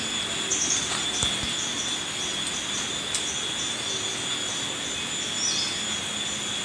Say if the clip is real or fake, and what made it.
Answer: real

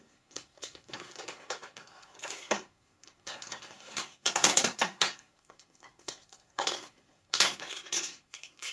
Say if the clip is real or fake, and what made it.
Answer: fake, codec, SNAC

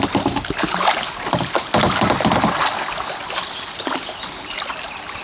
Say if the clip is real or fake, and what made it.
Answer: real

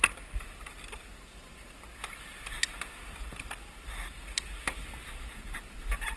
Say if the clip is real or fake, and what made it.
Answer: real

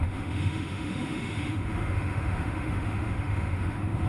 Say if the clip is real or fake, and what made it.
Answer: fake, autoencoder, DAC-VAE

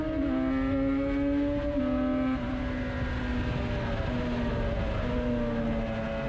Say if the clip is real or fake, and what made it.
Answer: real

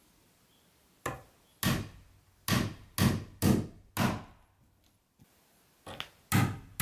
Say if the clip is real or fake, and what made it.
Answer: real